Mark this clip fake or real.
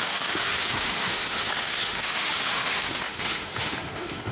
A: fake